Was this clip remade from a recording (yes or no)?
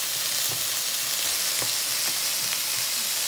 no